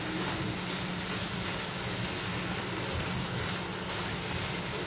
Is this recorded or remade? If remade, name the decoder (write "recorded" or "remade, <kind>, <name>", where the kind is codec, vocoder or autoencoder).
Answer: recorded